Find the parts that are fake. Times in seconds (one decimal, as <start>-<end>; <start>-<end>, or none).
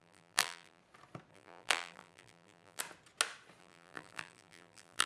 0.0-0.8; 1.3-2.8; 3.6-5.1